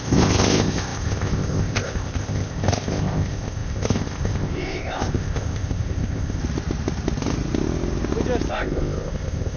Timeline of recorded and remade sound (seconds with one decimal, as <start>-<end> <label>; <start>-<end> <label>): 0.0-6.4 remade; 6.4-8.5 recorded; 8.5-9.6 remade